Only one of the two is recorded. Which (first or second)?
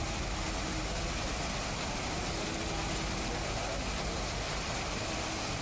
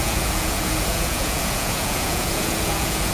first